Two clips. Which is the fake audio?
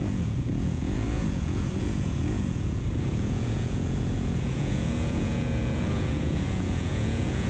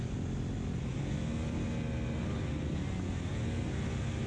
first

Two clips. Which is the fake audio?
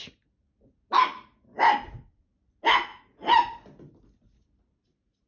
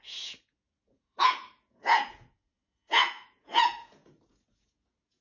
second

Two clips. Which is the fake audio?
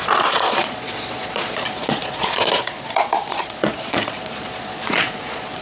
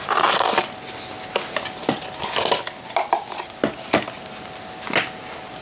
first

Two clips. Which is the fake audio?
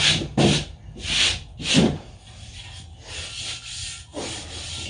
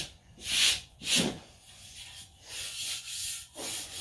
second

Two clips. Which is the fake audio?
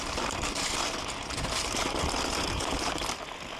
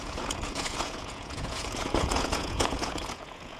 second